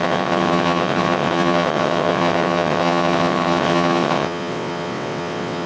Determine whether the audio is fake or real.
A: fake